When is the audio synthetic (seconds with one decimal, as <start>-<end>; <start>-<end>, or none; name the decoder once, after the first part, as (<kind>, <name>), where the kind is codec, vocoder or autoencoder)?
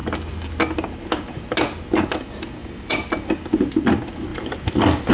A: 2.6-3.7 (vocoder, BigVGAN v2)